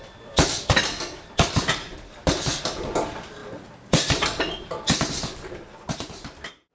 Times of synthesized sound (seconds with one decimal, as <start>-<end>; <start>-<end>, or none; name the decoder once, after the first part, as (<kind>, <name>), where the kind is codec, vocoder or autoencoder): 0.0-3.4 (vocoder, BigVGAN v2); 5.9-6.7